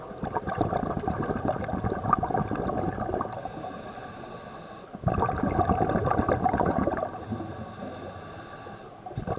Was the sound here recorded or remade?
recorded